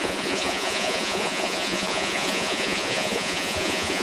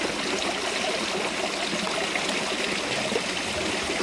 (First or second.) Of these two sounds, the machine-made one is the first